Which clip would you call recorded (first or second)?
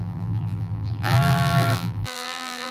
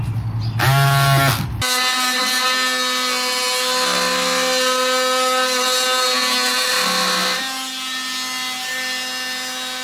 second